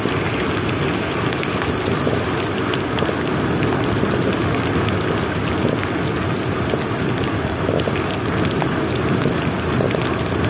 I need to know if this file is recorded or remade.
recorded